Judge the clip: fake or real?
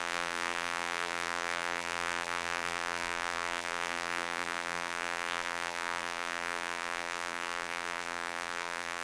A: fake